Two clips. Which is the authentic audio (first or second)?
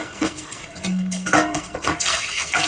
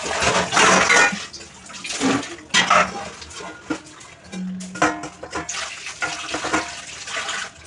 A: second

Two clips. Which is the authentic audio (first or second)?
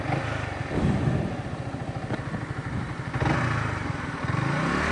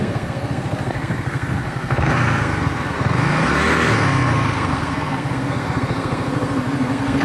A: first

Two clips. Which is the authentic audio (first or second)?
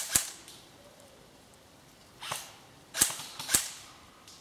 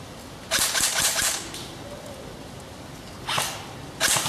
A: second